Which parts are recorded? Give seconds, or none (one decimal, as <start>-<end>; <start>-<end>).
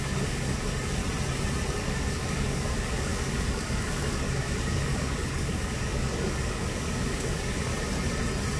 1.0-1.8; 7.7-8.6